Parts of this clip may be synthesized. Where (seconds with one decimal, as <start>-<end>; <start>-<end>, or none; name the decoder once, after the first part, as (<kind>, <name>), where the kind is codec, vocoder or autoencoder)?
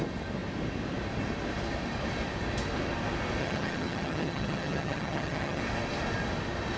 3.4-5.6 (vocoder, HiFi-GAN)